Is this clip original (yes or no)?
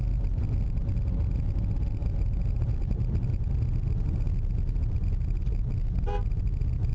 yes